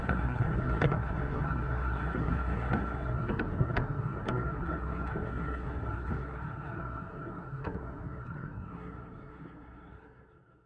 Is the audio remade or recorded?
remade